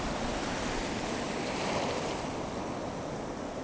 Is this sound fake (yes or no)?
yes